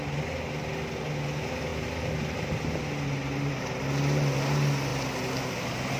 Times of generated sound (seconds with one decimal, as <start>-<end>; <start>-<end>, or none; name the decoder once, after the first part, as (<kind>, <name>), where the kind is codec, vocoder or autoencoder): none